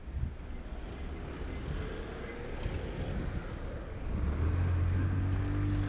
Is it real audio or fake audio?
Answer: real